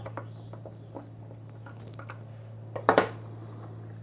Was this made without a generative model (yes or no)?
no